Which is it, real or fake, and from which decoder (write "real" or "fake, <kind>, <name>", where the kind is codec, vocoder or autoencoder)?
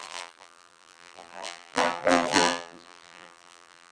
fake, vocoder, BigVGAN v2